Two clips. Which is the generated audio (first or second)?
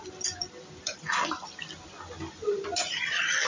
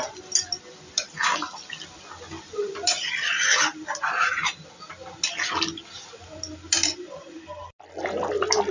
first